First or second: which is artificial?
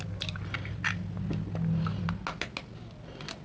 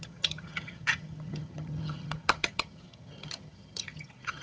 second